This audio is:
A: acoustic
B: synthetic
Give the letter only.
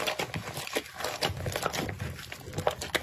A